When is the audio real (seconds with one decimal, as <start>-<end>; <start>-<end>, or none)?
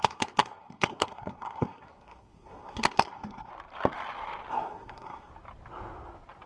3.5-4.5; 5.3-6.5